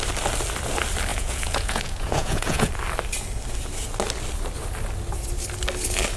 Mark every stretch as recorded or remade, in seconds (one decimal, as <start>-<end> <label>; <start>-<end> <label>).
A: 0.0-1.1 recorded; 1.1-2.7 remade; 2.7-6.2 recorded